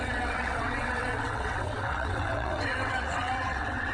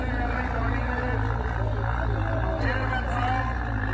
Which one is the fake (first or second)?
first